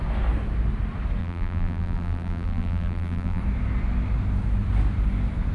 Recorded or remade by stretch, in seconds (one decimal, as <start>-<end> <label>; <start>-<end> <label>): 0.0-1.2 recorded; 1.2-3.4 remade; 3.4-5.5 recorded

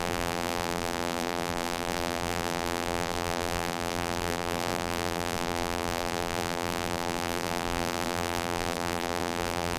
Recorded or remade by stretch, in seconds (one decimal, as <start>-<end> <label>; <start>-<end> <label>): 0.0-9.8 remade